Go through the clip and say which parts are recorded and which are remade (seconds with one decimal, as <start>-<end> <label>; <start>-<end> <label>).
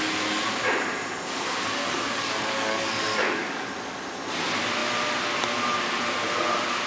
0.0-1.8 recorded; 1.8-3.7 remade; 3.7-6.9 recorded